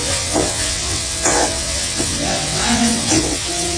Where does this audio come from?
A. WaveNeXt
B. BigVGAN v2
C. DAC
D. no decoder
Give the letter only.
A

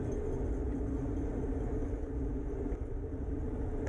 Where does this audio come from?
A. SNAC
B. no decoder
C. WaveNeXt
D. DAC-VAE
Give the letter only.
B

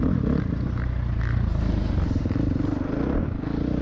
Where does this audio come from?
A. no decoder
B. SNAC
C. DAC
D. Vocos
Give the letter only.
A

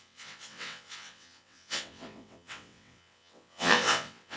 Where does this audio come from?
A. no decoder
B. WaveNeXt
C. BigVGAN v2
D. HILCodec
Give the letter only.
B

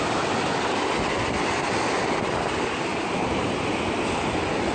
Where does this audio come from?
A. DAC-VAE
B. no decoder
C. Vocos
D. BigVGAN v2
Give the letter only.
B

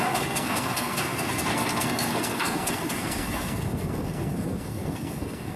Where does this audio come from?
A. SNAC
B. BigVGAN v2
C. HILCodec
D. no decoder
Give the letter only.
A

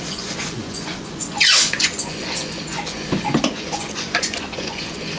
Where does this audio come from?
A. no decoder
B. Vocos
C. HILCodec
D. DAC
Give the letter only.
B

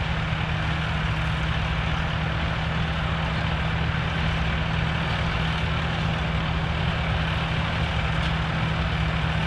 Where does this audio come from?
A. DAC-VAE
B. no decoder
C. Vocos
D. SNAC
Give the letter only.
B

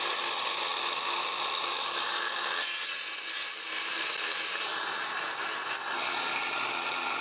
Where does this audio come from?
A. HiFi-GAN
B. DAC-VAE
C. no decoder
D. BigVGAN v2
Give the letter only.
C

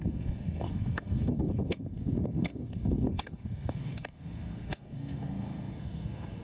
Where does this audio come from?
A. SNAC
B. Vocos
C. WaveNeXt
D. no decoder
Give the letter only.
A